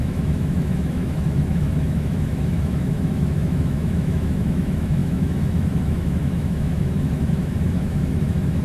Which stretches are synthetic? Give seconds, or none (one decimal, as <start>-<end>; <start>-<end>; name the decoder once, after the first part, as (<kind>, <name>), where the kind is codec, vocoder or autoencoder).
0.0-8.6 (autoencoder, DAC-VAE)